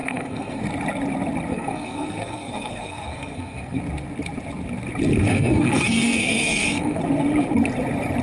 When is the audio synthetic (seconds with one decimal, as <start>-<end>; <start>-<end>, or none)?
0.0-0.6; 1.5-3.8; 5.3-7.0